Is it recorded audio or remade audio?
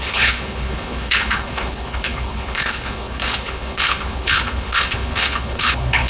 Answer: remade